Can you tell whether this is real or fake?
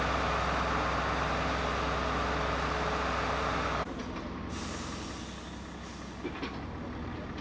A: real